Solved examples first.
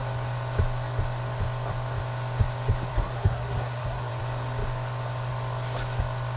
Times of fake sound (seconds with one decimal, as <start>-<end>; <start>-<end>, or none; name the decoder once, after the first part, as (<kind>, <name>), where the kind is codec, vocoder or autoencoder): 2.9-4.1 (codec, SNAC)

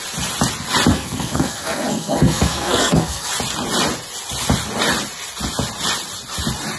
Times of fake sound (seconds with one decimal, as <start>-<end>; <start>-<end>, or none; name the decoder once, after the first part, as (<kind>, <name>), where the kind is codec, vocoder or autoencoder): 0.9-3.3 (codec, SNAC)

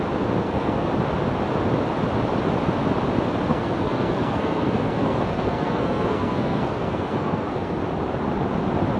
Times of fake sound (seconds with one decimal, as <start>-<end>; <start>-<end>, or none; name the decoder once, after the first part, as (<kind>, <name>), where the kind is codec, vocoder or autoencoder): 0.4-0.9 (codec, SNAC); 3.5-7.8